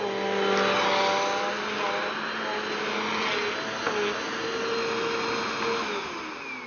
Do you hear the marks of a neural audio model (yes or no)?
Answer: no